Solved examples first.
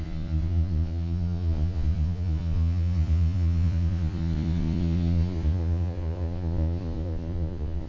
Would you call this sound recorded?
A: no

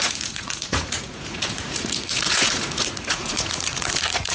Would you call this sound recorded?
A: no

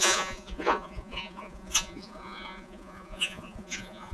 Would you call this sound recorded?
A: no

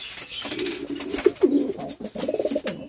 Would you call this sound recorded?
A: yes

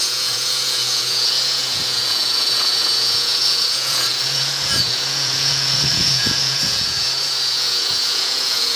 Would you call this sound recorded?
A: no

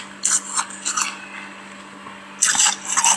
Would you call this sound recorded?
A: yes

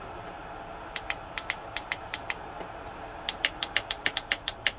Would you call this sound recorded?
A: yes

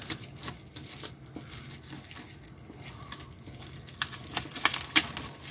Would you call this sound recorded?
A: yes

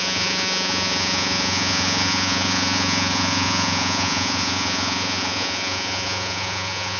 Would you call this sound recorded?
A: no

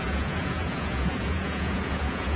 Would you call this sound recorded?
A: no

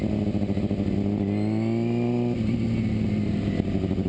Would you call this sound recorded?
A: yes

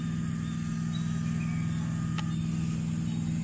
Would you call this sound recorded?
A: yes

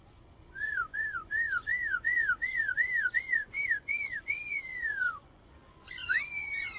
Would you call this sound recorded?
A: no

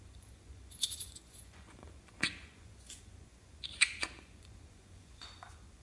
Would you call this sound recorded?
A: no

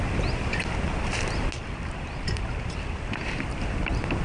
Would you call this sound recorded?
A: yes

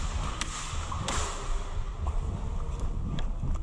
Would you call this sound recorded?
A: yes